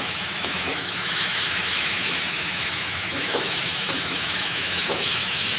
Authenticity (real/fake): fake